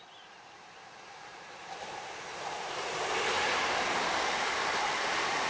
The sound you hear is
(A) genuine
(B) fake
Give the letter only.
B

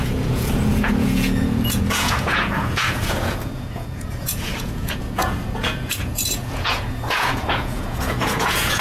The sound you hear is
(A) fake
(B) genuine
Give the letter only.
A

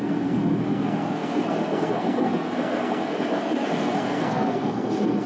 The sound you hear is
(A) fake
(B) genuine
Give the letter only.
A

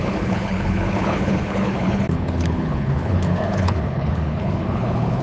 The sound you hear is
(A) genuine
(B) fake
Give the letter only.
B